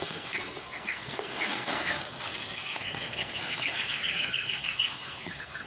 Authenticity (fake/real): fake